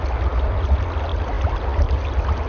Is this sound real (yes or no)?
yes